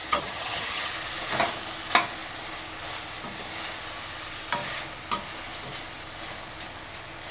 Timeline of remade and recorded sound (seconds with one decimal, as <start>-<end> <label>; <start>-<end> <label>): 0.0-0.9 remade; 0.9-7.3 recorded